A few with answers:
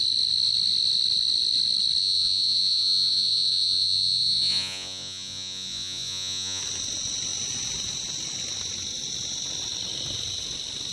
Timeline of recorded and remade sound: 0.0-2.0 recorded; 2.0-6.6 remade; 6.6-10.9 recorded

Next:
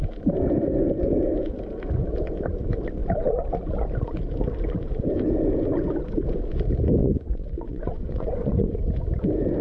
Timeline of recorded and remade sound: 0.0-7.0 recorded; 7.0-8.8 remade; 8.8-9.6 recorded

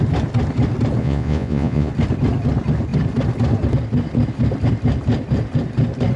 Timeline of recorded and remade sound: 0.0-1.0 recorded; 1.0-1.9 remade; 1.9-6.2 recorded

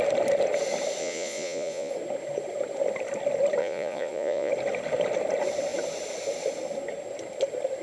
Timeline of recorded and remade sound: 0.0-1.0 recorded; 1.0-1.9 remade; 1.9-3.6 recorded; 3.6-4.5 remade; 4.5-7.8 recorded